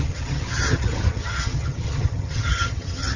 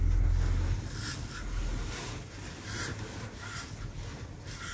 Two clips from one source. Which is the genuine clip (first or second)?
second